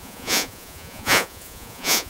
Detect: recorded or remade remade